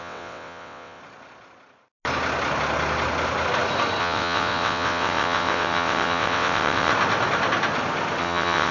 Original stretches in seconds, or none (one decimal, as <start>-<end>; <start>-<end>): 1.0-4.0; 6.9-8.2

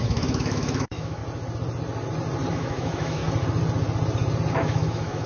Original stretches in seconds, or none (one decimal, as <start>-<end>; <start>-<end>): 1.2-2.5; 3.2-4.5

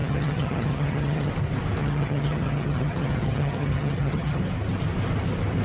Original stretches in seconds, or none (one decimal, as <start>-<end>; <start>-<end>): 1.3-1.8; 4.4-5.6

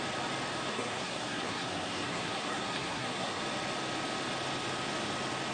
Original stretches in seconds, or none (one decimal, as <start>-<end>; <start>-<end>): 0.0-0.7; 3.4-5.5

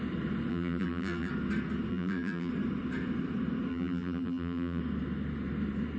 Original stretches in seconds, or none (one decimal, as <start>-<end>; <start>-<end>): 0.0-0.5; 1.3-1.9; 2.5-3.7; 4.8-6.0

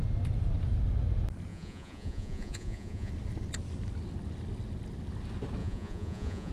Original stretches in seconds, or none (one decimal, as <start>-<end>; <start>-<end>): 0.0-1.5; 3.1-5.6